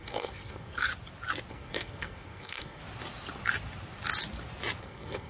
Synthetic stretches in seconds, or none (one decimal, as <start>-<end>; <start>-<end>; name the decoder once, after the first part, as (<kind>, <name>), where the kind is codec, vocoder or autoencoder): 0.0-0.9 (codec, SNAC); 1.5-2.8; 4.8-5.3